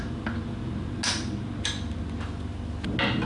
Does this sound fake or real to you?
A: real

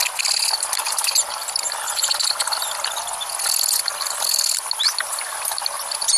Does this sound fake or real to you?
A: real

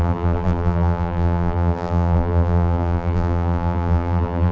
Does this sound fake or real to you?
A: fake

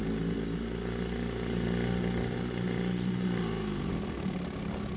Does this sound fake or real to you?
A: real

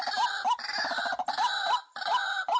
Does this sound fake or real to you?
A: real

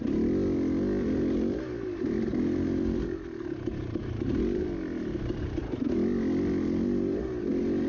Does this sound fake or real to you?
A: real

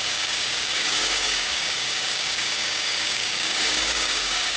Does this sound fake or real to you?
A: fake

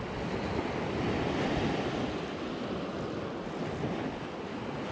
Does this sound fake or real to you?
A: real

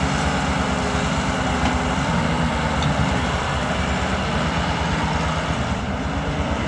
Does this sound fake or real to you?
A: real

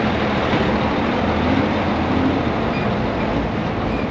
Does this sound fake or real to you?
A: real